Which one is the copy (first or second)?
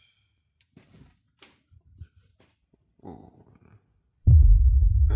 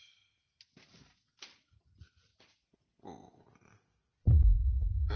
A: first